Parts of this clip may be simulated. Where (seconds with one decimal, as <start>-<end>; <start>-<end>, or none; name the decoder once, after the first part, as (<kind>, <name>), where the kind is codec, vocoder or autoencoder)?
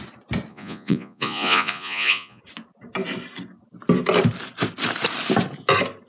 0.5-2.4 (vocoder, Vocos)